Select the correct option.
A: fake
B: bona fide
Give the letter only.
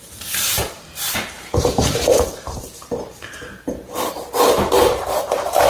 A